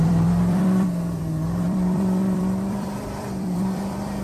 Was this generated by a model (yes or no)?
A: yes